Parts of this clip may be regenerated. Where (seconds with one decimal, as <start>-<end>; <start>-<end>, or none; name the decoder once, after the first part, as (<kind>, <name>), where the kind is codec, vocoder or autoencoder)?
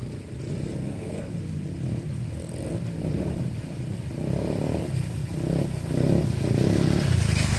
0.8-1.3 (codec, SNAC)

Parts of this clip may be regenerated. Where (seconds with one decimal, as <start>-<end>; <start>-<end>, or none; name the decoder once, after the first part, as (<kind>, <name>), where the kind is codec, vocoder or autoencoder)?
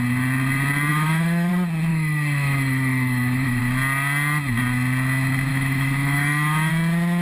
0.9-1.5 (autoencoder, DAC-VAE); 1.9-3.6; 5.5-6.7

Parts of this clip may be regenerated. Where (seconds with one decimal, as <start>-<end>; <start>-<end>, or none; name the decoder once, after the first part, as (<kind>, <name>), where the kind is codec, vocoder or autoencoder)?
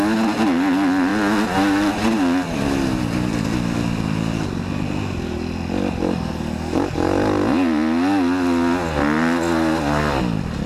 none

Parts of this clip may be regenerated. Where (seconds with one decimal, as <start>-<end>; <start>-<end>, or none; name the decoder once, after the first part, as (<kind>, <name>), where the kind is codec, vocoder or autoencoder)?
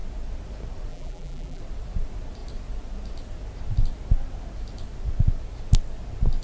0.9-1.6 (vocoder, BigVGAN v2)